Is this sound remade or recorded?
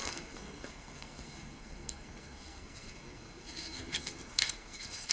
remade